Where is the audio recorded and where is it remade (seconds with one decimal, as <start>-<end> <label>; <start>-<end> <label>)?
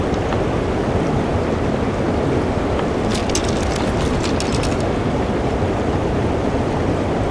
0.0-1.3 remade; 1.3-2.3 recorded; 2.3-3.2 remade; 3.2-5.1 recorded; 5.1-7.3 remade